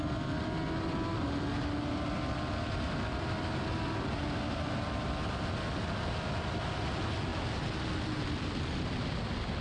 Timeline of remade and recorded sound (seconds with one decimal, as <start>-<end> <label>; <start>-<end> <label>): 0.0-9.6 recorded